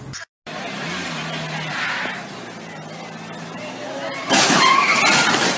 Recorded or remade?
recorded